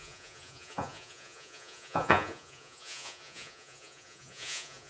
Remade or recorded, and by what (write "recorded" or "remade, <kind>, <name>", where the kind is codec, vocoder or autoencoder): remade, vocoder, Vocos